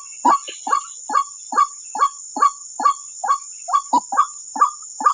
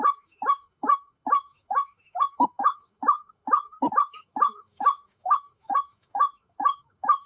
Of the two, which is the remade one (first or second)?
second